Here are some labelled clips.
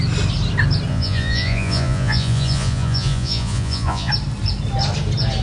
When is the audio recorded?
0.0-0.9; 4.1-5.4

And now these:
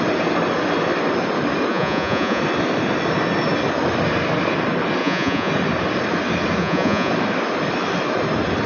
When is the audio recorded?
0.0-1.7; 2.4-5.0; 5.5-6.6; 7.1-8.7

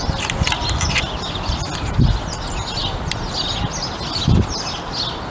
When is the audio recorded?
0.0-5.3